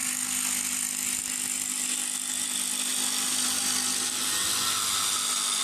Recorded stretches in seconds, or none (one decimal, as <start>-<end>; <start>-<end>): 0.0-5.6